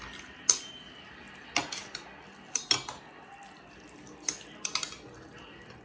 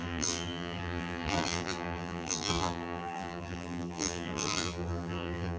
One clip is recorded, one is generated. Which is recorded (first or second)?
first